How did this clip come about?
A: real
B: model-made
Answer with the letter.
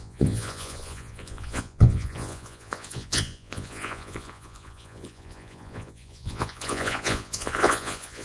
B